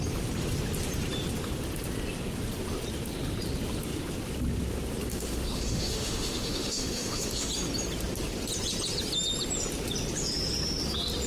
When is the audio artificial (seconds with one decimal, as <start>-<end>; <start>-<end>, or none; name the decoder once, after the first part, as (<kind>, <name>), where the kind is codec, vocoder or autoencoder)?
5.1-7.5 (autoencoder, DAC-VAE)